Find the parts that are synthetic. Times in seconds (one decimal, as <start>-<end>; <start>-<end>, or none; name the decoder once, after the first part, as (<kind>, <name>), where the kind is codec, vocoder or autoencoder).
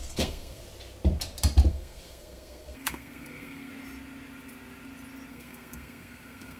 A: 0.0-0.6 (codec, SNAC); 1.7-3.7; 5.3-6.6